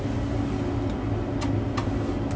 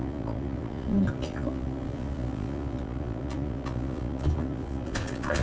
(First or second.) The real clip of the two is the first